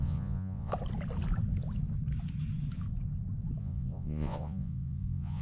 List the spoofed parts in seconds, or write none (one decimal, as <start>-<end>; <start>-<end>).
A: 0.0-0.7; 3.6-5.4